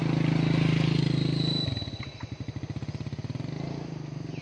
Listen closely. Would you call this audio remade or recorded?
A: recorded